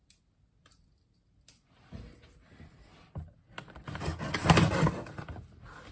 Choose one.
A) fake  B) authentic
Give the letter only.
B